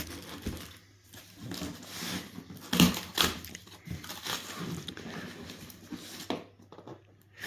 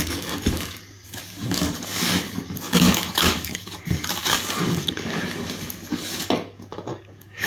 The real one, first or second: first